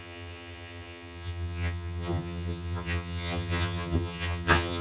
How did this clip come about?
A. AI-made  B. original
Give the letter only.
A